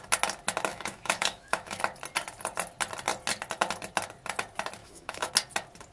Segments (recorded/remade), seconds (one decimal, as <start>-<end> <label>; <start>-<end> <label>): 0.0-0.7 recorded; 0.7-1.8 remade; 1.8-4.8 recorded; 4.8-5.3 remade; 5.3-5.9 recorded